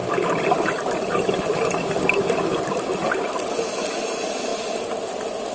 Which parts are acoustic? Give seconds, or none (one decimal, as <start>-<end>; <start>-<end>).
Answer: 0.0-5.5